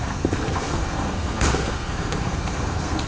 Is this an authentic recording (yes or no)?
no